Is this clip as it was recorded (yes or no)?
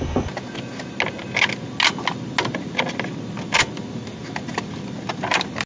yes